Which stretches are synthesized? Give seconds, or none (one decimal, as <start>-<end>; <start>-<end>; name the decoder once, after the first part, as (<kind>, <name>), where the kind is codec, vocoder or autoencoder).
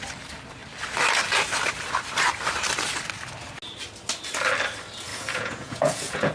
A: 5.1-6.3 (vocoder, Vocos)